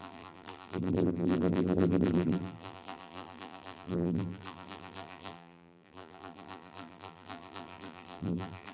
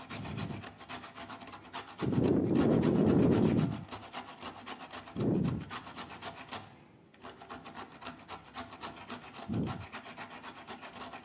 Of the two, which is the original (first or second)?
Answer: second